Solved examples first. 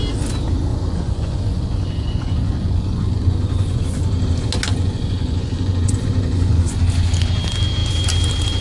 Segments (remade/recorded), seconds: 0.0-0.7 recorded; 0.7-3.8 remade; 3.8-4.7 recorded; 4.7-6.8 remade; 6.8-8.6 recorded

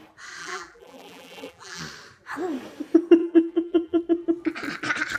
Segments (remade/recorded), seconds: 0.0-0.4 recorded; 0.4-1.8 remade; 1.8-3.2 recorded; 3.2-4.0 remade; 4.0-5.2 recorded

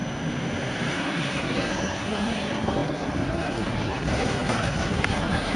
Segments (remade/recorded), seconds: 0.0-0.9 recorded; 0.9-5.6 remade

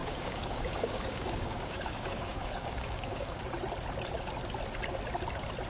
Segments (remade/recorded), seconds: 0.0-3.4 remade; 3.4-5.7 recorded

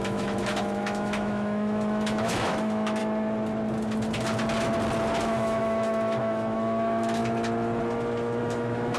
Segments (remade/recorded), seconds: 0.0-3.0 remade; 3.0-5.2 recorded; 5.2-7.2 remade; 7.2-8.4 recorded; 8.4-9.0 remade